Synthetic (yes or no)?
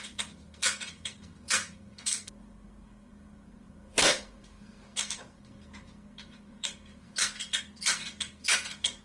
yes